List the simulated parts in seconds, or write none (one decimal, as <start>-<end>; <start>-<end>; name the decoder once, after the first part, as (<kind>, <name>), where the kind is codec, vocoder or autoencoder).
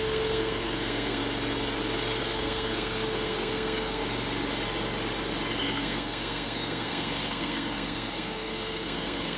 0.0-1.2 (codec, SNAC); 2.2-4.0; 5.6-9.4